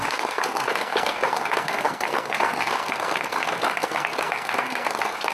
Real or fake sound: fake